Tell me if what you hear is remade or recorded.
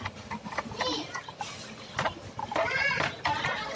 recorded